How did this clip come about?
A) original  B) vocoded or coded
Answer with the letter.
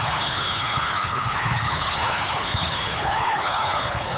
B